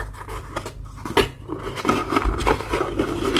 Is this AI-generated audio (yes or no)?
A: no